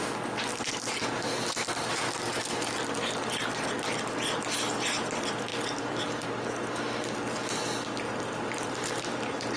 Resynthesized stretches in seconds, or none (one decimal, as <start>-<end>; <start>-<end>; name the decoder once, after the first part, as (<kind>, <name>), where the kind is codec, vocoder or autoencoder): none